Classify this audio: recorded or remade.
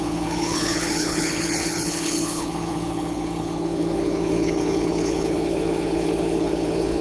remade